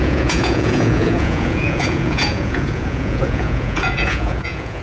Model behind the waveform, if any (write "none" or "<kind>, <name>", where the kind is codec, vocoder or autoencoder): vocoder, Vocos